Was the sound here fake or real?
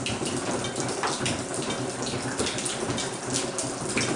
real